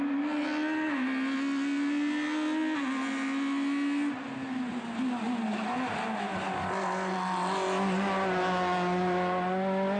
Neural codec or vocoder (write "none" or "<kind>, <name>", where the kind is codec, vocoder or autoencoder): none